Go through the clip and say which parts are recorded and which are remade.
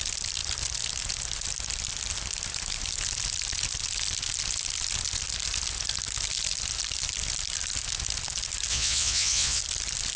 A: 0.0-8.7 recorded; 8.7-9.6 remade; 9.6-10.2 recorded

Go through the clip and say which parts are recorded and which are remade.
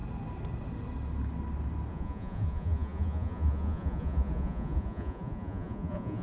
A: 0.0-1.9 recorded; 1.9-6.2 remade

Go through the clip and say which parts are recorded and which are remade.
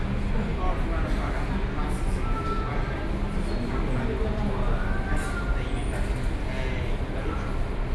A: 0.0-7.9 recorded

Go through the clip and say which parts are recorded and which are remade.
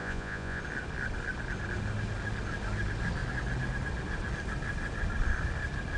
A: 0.0-0.6 remade; 0.6-6.0 recorded